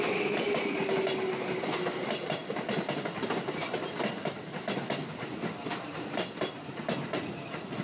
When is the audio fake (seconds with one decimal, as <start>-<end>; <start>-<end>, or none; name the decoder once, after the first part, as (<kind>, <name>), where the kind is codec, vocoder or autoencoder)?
none